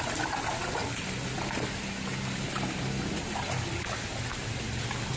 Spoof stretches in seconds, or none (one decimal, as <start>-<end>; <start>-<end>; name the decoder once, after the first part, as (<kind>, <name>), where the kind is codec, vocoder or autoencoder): none